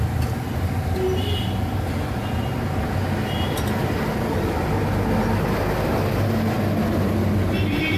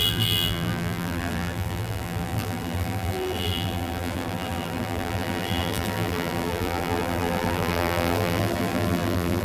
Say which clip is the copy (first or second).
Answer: second